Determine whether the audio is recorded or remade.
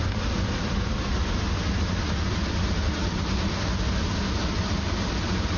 recorded